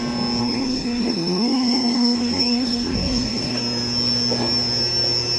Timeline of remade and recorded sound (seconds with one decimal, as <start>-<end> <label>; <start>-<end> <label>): 0.0-0.4 recorded; 0.4-3.6 remade; 3.6-5.4 recorded